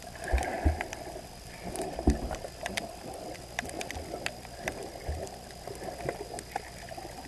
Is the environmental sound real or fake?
real